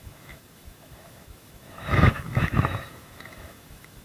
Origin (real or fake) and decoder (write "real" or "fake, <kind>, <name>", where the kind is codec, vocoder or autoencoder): fake, autoencoder, DAC-VAE